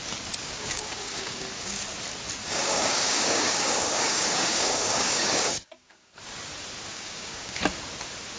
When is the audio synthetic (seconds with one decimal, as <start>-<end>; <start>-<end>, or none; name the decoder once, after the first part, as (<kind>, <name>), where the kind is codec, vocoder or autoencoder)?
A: 0.4-1.8 (codec, DAC); 2.4-6.1; 6.9-7.6